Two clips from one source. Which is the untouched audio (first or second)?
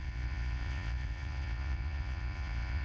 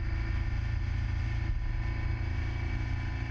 second